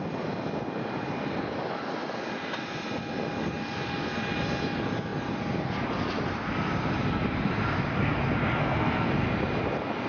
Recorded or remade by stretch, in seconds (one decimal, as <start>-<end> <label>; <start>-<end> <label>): 0.0-8.6 recorded; 8.6-9.1 remade; 9.1-10.1 recorded